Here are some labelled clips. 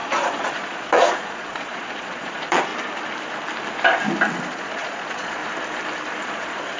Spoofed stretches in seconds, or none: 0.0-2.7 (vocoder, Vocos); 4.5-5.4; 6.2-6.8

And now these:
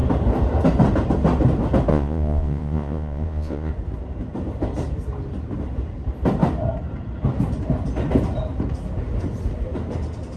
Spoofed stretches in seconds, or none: 1.9-3.7 (vocoder, Vocos)

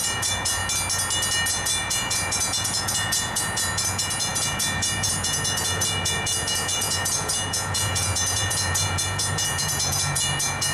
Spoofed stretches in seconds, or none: 0.0-0.6 (vocoder, Vocos); 1.5-10.7